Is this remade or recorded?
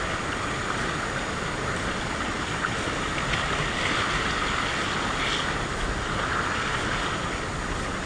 recorded